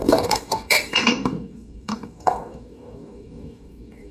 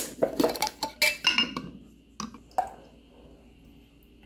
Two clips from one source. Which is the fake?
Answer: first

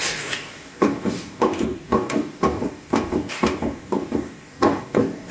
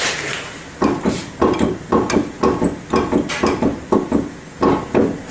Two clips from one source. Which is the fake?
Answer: first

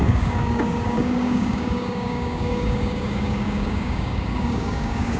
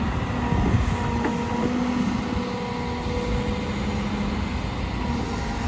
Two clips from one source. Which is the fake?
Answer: first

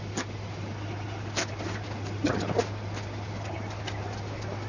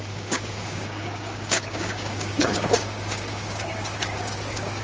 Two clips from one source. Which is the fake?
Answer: second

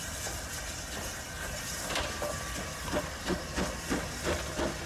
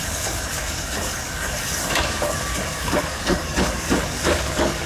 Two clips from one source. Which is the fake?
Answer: second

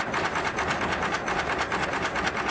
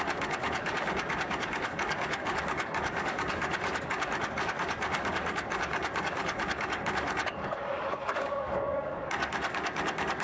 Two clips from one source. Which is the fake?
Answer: second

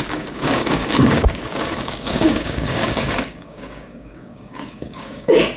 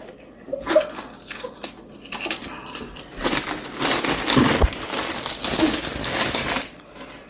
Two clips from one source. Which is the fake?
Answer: first